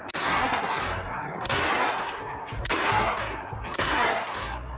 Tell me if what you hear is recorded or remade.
remade